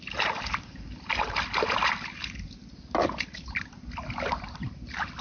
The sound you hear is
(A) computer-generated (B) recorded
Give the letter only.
B